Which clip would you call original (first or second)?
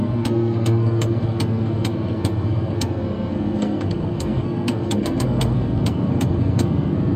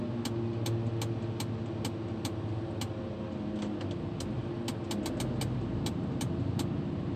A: second